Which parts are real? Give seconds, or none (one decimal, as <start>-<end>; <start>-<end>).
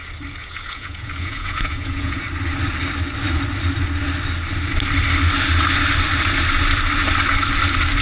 0.0-0.4; 2.2-8.0